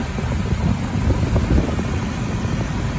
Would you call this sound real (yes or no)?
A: yes